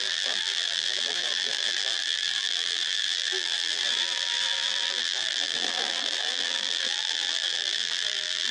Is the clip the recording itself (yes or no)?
no